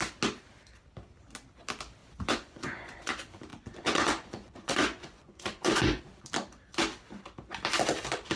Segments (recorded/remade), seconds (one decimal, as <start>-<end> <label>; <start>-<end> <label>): 0.0-2.0 recorded; 2.0-3.1 remade; 3.1-3.5 recorded; 3.5-6.0 remade; 6.0-8.4 recorded